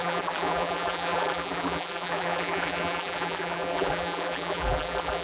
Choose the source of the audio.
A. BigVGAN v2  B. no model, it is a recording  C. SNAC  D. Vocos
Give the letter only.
A